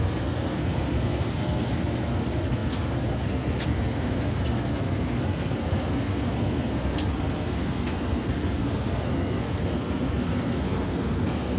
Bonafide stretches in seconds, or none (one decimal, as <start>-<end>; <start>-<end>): none